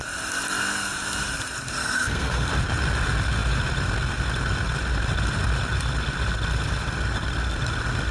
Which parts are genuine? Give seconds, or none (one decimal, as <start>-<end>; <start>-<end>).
0.0-1.8; 2.5-8.1